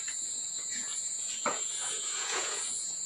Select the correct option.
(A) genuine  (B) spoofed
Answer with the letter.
B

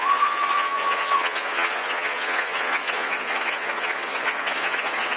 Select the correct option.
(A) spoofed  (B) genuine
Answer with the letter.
A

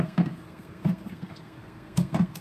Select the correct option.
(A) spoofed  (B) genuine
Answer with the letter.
A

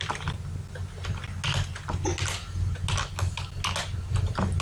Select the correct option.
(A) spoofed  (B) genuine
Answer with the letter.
B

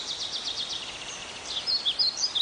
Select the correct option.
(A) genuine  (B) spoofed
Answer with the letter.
A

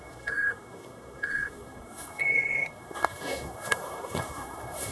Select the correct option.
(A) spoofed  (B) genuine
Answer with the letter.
A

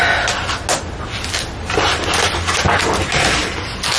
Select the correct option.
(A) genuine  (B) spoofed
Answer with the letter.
A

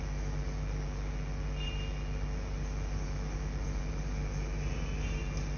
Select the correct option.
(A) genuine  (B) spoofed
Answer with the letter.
A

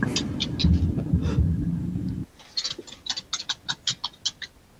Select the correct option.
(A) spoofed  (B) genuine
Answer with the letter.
B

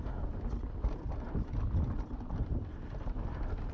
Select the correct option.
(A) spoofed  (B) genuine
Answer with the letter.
A